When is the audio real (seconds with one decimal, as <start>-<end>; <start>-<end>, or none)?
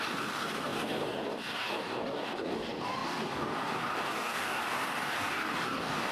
none